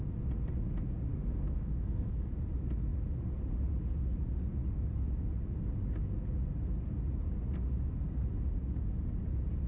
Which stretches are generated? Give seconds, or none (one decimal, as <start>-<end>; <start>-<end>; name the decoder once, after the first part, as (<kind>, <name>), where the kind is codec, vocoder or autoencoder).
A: 1.1-2.3 (codec, SNAC)